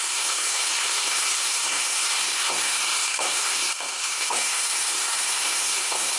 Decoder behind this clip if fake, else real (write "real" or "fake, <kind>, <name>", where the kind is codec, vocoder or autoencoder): fake, codec, SNAC